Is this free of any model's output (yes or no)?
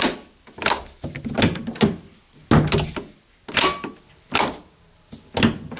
yes